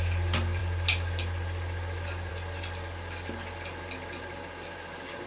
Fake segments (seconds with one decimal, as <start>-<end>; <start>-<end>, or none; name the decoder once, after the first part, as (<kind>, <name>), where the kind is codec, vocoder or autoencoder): none